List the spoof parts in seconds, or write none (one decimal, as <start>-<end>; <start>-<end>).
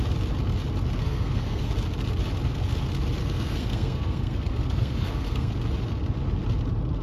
1.0-1.7; 3.2-5.5